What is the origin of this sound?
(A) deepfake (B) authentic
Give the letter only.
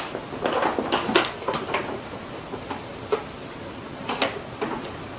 B